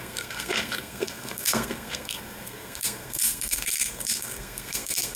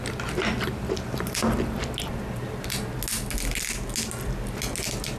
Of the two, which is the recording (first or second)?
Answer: second